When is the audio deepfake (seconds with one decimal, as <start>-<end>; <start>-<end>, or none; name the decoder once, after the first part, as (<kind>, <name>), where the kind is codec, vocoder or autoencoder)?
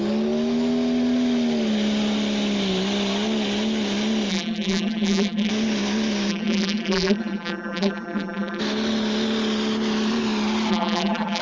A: 4.3-5.5 (vocoder, BigVGAN v2); 6.3-8.6; 10.7-11.4